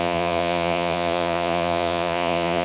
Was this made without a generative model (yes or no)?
no